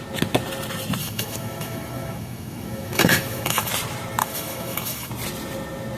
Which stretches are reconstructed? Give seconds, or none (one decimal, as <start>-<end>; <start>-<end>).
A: 1.0-3.7; 4.2-5.1